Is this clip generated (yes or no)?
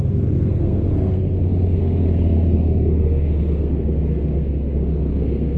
yes